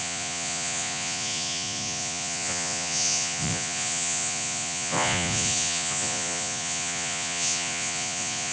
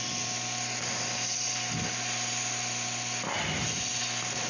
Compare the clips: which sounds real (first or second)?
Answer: second